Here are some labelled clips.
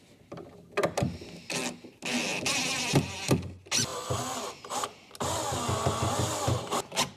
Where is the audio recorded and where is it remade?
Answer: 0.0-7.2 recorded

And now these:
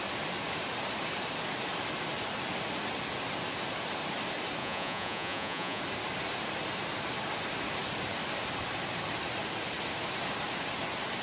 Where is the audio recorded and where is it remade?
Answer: 0.0-4.6 recorded; 4.6-5.8 remade; 5.8-11.2 recorded

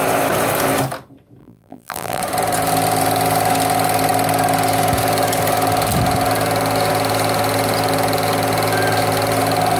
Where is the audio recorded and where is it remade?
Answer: 0.0-1.4 recorded; 1.4-2.2 remade; 2.2-9.8 recorded

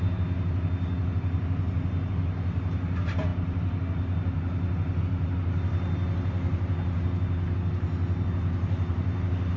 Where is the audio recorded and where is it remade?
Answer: 0.0-9.6 recorded

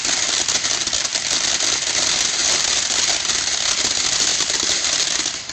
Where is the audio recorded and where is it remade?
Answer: 0.0-4.3 recorded; 4.3-5.5 remade